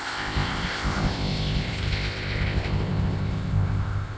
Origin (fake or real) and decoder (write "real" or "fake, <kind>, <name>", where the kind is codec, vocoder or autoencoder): fake, codec, ZipCodec